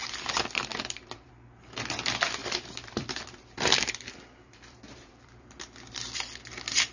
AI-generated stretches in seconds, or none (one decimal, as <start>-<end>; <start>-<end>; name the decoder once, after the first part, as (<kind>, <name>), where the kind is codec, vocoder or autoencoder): 0.7-1.3 (vocoder, BigVGAN v2); 2.4-5.5